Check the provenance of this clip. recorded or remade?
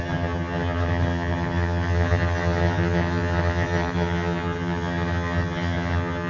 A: remade